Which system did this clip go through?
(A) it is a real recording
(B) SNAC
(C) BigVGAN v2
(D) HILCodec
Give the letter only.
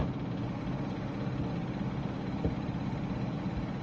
A